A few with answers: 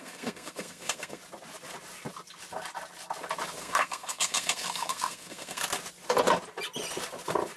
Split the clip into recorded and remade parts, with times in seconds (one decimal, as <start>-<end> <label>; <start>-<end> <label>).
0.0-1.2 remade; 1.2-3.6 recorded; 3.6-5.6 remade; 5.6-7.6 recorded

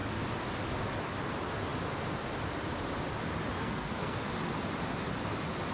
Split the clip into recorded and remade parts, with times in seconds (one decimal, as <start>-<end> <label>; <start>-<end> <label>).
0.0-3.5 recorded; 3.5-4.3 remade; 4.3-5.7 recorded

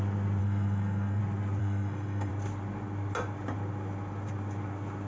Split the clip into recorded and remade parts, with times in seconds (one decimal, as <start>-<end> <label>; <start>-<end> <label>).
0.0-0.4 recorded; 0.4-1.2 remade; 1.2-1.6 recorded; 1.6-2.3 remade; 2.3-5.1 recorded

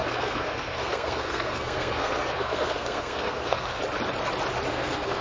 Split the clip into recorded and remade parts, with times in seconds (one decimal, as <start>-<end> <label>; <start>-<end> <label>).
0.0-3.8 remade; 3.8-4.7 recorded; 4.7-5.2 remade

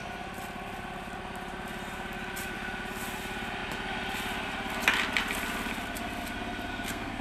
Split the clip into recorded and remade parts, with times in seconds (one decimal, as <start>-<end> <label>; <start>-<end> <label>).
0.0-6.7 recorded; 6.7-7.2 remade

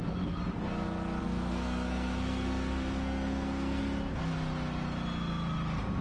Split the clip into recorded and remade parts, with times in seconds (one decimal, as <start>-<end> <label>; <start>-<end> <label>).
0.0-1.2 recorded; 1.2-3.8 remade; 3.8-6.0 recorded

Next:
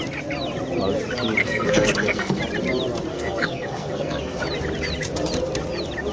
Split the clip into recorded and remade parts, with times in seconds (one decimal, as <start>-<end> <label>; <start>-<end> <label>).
0.0-1.4 recorded; 1.4-2.4 remade; 2.4-3.1 recorded; 3.1-4.4 remade; 4.4-6.1 recorded

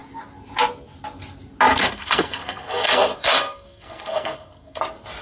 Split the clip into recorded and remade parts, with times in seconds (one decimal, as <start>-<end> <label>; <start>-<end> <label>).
0.0-1.7 recorded; 1.7-4.8 remade; 4.8-5.2 recorded